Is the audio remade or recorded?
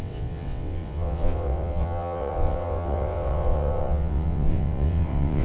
remade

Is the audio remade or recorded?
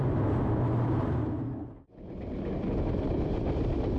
recorded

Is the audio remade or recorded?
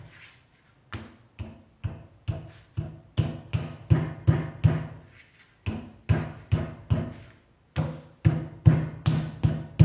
recorded